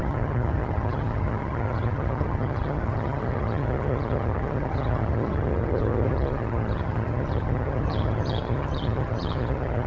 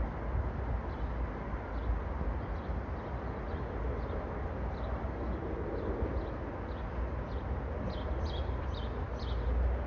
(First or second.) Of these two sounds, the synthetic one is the first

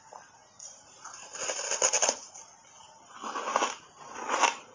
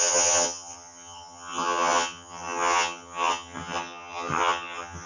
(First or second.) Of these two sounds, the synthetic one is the second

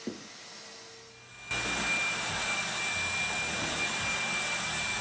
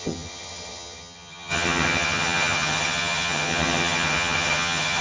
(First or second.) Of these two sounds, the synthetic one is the second